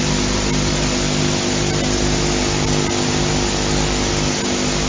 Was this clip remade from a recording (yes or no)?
no